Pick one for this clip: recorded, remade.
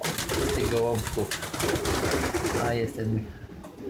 recorded